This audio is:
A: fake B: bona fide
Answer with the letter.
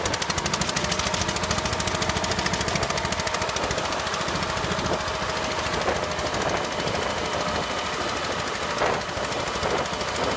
B